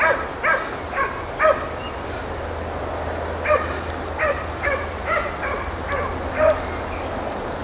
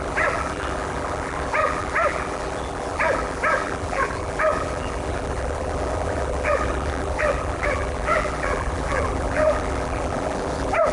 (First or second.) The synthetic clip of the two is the second